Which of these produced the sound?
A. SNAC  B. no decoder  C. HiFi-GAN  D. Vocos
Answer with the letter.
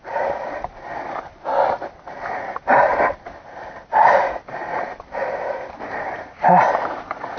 B